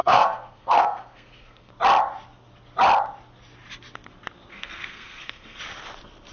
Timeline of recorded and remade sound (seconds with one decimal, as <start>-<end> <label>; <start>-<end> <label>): 0.0-1.7 remade; 1.7-4.5 recorded; 4.5-5.6 remade; 5.6-6.3 recorded